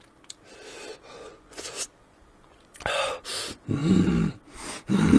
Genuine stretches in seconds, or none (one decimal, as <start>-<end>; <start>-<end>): 0.0-0.9; 3.1-5.2